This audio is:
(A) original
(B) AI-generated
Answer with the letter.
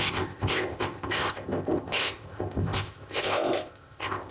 B